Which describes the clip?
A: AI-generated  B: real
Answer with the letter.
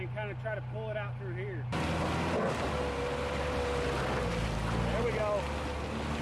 B